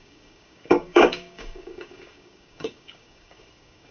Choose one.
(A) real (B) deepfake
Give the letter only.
B